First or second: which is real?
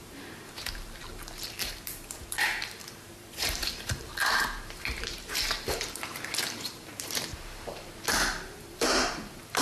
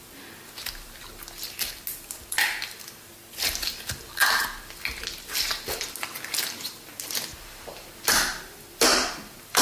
second